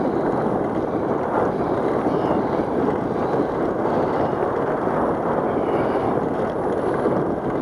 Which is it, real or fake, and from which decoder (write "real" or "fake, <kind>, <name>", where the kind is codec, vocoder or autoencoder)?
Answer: real